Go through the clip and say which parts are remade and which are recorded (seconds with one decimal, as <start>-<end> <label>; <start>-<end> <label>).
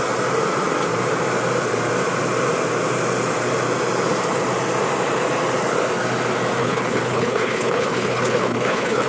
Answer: 0.0-6.6 recorded; 6.6-9.1 remade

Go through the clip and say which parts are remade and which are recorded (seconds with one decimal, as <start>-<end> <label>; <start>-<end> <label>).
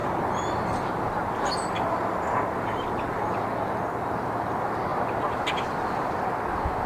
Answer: 0.0-3.4 remade; 3.4-4.9 recorded; 4.9-6.3 remade; 6.3-6.9 recorded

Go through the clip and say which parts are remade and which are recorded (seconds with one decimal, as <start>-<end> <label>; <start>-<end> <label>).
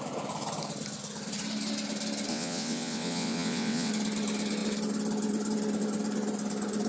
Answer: 0.0-2.3 recorded; 2.3-3.9 remade; 3.9-6.9 recorded